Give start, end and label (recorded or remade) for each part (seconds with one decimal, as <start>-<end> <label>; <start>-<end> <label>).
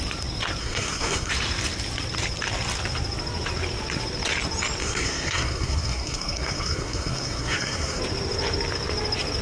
0.0-0.6 recorded; 0.6-1.3 remade; 1.3-4.8 recorded; 4.8-8.0 remade; 8.0-9.4 recorded